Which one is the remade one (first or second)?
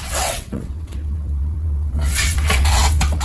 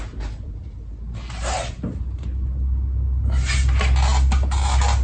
first